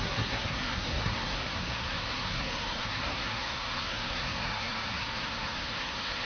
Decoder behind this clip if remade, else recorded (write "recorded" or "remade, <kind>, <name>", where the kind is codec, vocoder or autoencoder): remade, codec, SNAC